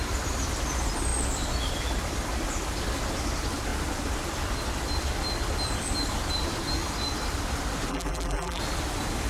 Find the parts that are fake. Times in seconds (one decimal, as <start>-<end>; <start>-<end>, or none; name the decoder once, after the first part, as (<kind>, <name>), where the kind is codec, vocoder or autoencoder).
7.9-8.6 (vocoder, BigVGAN v2)